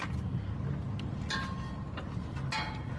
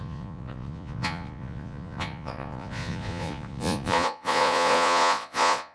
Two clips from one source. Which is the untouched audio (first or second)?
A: first